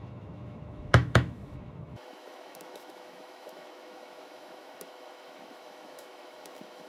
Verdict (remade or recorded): remade